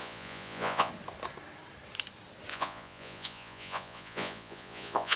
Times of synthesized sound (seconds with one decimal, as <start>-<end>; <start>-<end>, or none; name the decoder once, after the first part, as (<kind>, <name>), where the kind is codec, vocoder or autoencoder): 0.0-0.9 (vocoder, Vocos); 2.5-5.2